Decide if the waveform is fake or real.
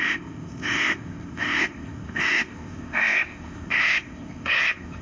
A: fake